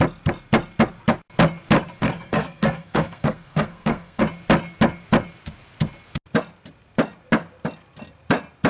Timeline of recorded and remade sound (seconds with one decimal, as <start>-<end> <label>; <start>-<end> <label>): 0.0-2.0 recorded; 2.0-4.2 remade; 4.2-8.7 recorded